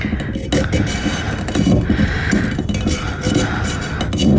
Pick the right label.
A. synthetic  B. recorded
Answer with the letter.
B